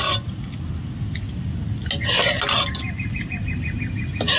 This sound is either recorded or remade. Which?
recorded